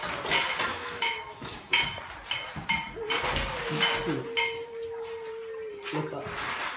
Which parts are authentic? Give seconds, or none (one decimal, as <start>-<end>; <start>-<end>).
0.0-0.7; 2.0-6.8